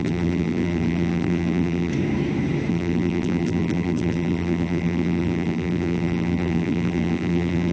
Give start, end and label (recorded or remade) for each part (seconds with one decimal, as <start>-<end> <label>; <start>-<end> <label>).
0.0-1.9 remade; 1.9-2.7 recorded; 2.7-7.7 remade